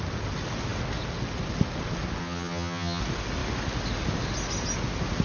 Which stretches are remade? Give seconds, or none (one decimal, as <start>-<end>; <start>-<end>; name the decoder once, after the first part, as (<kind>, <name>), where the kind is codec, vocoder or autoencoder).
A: 2.2-3.0 (vocoder, HiFi-GAN)